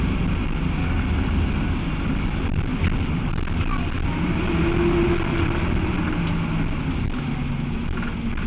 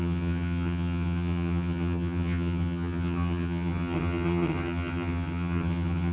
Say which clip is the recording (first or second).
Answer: first